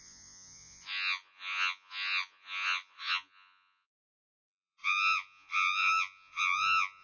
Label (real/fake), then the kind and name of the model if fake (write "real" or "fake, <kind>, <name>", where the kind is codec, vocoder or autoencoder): fake, vocoder, Vocos